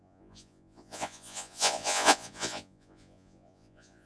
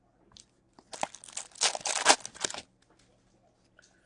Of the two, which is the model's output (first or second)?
first